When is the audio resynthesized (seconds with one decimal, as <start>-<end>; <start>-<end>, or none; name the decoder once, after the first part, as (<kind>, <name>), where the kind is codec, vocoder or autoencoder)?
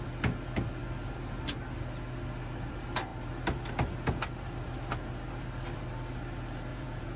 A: 6.7-7.2 (vocoder, Vocos)